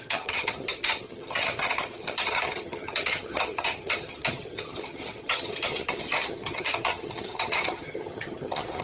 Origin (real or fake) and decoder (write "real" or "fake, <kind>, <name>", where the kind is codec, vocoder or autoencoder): fake, vocoder, HiFi-GAN